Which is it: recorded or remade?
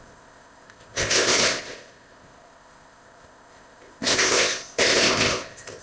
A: remade